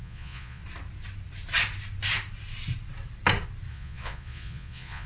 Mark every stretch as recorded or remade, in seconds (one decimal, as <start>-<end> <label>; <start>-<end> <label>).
0.0-0.6 remade; 0.6-3.7 recorded; 3.7-5.1 remade